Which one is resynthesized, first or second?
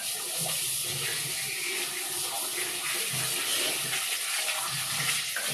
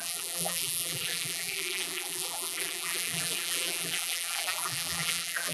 second